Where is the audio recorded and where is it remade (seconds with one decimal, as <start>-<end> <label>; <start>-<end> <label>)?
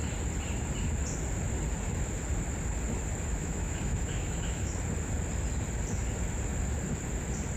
0.0-3.3 recorded; 3.3-4.7 remade; 4.7-7.6 recorded